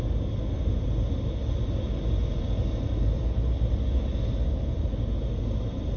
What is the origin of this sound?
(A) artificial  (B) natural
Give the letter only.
B